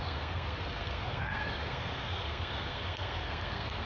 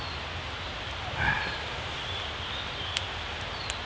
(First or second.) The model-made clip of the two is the first